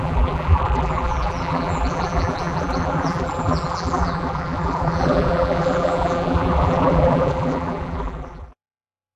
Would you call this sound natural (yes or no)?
no